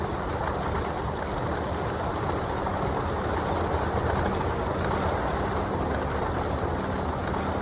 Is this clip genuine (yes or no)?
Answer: yes